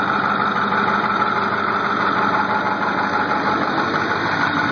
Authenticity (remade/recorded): recorded